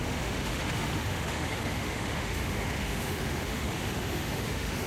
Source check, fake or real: fake